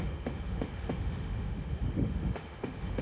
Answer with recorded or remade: remade